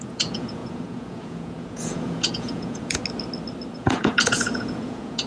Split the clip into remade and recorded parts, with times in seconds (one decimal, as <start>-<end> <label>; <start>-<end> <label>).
0.0-3.0 remade; 3.0-3.7 recorded; 3.7-5.3 remade